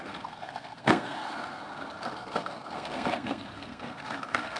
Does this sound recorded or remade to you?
remade